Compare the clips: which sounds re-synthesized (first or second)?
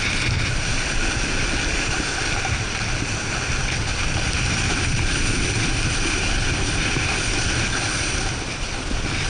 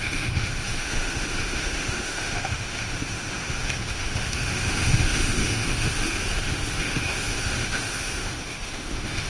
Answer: second